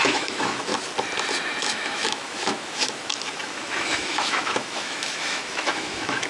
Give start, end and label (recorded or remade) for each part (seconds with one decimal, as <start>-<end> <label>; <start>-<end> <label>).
0.0-0.7 remade; 0.7-1.6 recorded; 1.6-6.3 remade